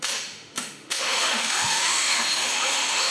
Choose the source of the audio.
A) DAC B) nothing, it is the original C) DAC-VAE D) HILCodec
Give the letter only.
C